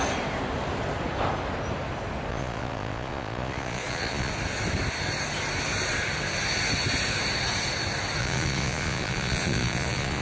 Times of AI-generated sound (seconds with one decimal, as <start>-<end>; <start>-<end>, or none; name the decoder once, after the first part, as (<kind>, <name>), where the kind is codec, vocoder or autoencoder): 2.3-4.3 (vocoder, Vocos); 8.2-10.2